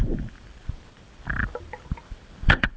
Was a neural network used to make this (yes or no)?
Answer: yes